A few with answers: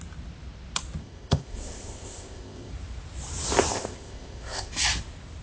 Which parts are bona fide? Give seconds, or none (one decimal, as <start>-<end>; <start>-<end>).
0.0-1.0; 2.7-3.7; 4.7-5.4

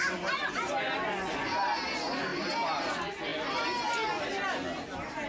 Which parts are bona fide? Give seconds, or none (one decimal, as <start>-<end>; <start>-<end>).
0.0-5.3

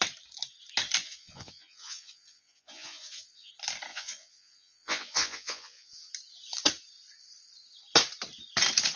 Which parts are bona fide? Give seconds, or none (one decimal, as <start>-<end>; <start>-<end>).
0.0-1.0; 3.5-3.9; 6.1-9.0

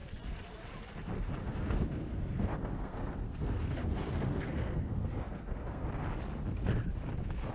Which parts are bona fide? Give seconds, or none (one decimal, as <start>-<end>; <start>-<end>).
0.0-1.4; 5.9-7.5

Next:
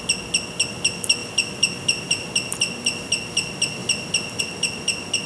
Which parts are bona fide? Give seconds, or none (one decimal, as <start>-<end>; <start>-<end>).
0.0-5.3